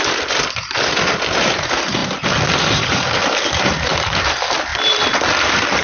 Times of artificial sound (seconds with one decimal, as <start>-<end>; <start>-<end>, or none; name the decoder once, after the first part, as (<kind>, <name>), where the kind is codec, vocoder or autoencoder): none